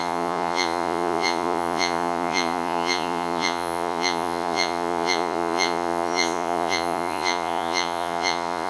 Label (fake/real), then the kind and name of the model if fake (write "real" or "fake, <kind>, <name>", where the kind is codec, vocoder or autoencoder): fake, vocoder, Vocos